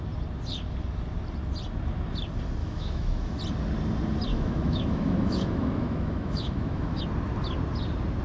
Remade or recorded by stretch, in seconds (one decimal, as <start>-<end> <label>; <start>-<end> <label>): 0.0-2.6 recorded; 2.6-3.4 remade; 3.4-4.3 recorded; 4.3-7.0 remade; 7.0-8.2 recorded